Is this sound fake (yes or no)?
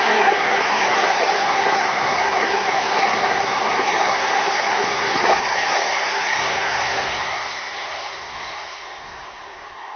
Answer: yes